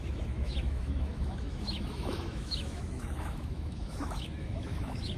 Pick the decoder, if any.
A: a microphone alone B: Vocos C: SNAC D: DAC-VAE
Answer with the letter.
D